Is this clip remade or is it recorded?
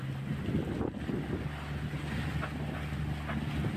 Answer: recorded